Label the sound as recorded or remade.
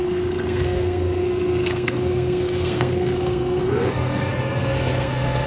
remade